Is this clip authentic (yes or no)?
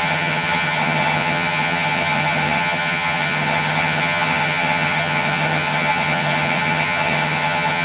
no